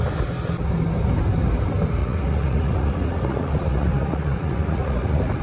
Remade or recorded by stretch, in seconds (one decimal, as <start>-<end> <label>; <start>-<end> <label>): 0.0-2.0 recorded; 2.0-5.4 remade